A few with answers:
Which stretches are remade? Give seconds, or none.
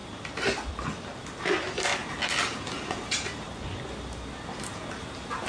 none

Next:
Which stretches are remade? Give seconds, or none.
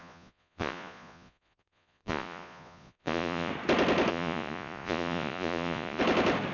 0.0-3.5 (vocoder, Vocos); 4.1-6.0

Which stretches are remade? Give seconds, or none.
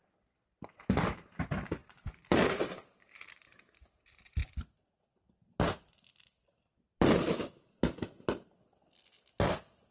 0.0-0.4 (vocoder, BigVGAN v2); 1.2-4.4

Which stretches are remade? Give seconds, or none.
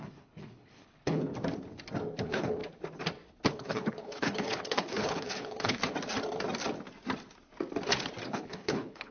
0.0-1.3 (codec, HILCodec); 2.2-2.6; 3.5-5.8; 8.3-9.1